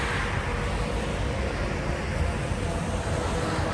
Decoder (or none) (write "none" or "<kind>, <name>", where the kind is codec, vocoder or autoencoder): none